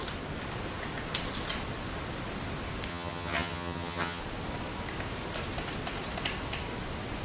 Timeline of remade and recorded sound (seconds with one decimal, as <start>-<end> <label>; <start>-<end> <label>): 0.0-2.9 recorded; 2.9-4.2 remade; 4.2-7.2 recorded